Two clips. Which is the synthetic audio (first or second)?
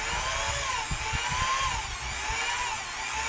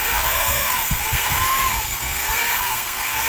second